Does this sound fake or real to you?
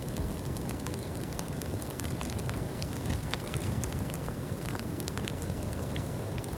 fake